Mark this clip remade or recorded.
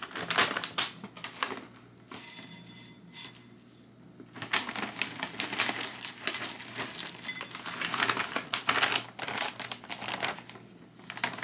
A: recorded